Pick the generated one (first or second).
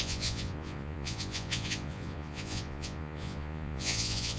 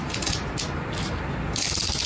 first